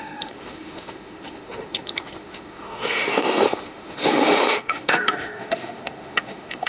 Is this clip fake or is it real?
fake